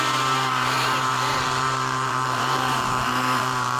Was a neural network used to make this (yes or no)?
yes